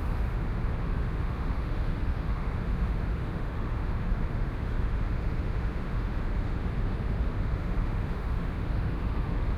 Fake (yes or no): yes